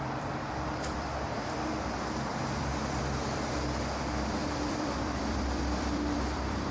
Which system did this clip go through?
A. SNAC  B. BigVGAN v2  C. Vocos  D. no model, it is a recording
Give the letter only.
B